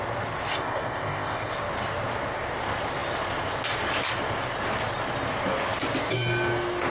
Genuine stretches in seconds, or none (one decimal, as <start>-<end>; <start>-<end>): 0.0-0.5; 1.5-6.9